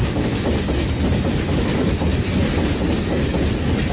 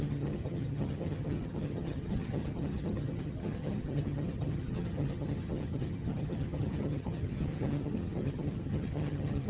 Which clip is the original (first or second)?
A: first